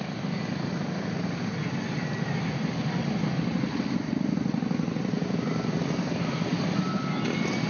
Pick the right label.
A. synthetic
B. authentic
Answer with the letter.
B